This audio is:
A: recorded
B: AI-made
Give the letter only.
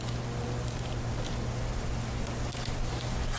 A